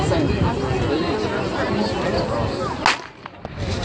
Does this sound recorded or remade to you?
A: recorded